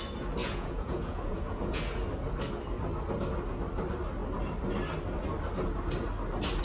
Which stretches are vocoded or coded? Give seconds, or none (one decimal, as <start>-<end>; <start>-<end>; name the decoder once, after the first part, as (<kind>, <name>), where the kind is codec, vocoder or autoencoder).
0.4-1.8 (vocoder, Vocos)

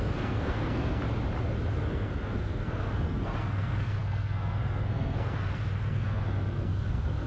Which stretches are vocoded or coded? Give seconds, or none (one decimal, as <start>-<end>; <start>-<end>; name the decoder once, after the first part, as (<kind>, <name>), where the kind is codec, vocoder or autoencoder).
0.0-1.0 (codec, SNAC); 1.7-7.3

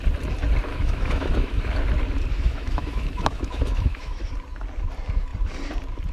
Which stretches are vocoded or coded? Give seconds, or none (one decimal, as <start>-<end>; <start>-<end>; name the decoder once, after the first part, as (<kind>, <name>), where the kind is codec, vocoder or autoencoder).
0.7-1.6 (autoencoder, DAC-VAE); 2.3-4.3

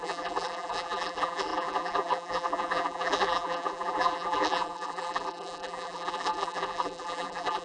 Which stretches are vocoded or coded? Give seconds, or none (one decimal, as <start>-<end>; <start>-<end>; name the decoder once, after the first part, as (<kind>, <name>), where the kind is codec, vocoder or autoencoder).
0.0-7.6 (vocoder, BigVGAN v2)

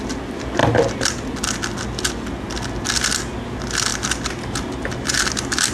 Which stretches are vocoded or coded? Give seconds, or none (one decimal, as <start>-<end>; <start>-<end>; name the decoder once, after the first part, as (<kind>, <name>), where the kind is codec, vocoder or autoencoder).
none

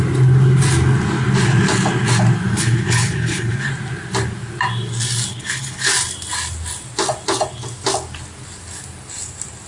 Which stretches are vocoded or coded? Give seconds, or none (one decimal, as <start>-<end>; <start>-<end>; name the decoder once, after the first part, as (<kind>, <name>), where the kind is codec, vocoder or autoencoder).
2.5-3.7 (codec, HILCodec); 5.3-5.9

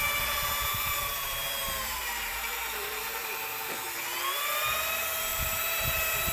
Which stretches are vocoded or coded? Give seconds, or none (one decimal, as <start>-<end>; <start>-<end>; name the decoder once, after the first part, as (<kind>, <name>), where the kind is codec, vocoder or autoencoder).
0.7-3.7 (vocoder, BigVGAN v2); 5.3-5.8